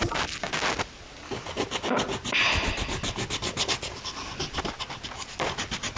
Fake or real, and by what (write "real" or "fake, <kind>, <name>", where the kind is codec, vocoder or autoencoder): real